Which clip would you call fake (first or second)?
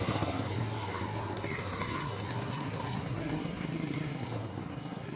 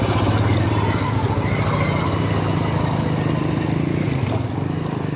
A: first